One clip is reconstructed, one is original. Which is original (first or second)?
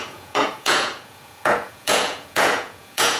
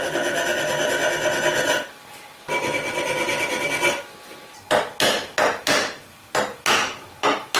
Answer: second